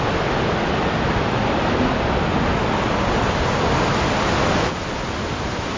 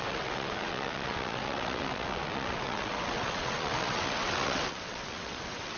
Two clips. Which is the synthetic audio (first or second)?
second